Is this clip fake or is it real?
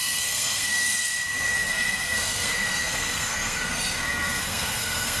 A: fake